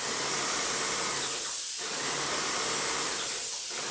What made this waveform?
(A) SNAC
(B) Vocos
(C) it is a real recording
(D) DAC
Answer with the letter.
C